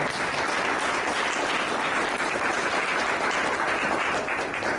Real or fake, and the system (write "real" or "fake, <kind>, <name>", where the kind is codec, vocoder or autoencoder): real